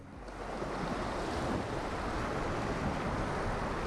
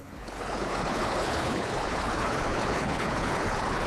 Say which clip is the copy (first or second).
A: second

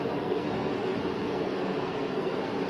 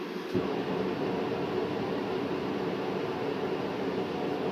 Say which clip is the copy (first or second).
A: first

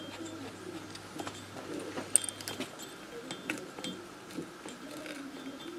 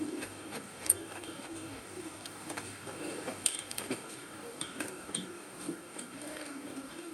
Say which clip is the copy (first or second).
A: second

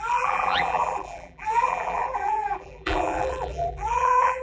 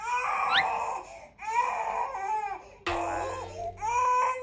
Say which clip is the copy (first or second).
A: first